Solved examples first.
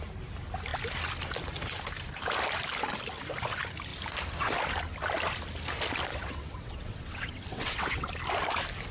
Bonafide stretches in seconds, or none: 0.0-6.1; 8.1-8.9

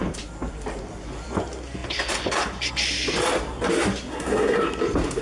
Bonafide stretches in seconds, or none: 0.0-4.1; 4.7-5.2

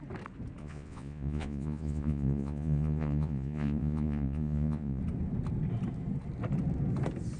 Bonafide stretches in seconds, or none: 0.0-0.6; 5.0-7.4